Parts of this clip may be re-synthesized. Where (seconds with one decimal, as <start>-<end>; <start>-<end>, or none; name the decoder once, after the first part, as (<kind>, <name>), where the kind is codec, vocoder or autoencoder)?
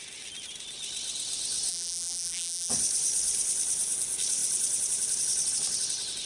1.7-2.7 (vocoder, BigVGAN v2)